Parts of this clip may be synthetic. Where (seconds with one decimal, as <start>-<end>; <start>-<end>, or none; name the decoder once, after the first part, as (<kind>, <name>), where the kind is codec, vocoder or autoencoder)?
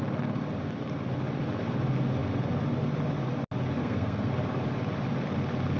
3.8-4.3 (codec, SNAC)